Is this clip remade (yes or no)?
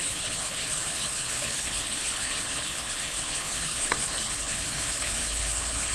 yes